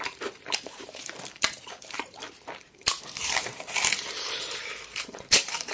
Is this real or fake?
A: fake